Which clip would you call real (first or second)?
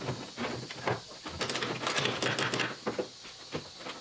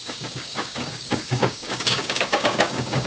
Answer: first